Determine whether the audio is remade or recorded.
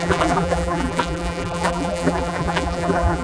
remade